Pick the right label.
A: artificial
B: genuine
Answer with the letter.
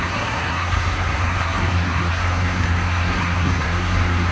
A